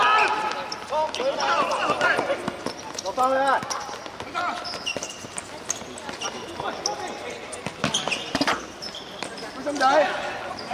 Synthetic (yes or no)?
no